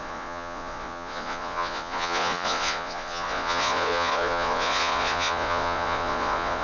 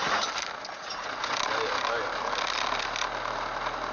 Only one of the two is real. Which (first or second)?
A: second